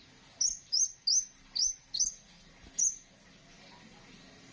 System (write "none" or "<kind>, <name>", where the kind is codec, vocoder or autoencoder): none